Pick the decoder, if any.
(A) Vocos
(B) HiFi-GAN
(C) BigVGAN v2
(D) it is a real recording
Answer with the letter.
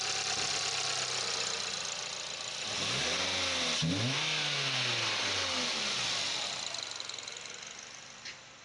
D